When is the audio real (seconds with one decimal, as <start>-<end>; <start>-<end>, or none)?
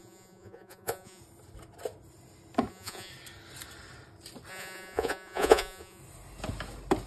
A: 1.2-2.7; 3.1-4.5; 6.0-7.1